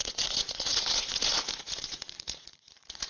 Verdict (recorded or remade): remade